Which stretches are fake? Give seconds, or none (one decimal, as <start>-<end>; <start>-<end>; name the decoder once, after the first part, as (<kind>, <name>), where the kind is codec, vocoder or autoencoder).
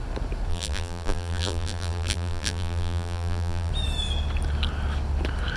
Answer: 0.5-3.7 (vocoder, BigVGAN v2)